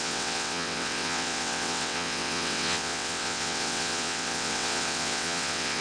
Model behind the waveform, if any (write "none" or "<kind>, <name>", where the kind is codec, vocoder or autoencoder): vocoder, WaveNeXt